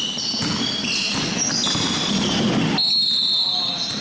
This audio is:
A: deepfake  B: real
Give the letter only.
B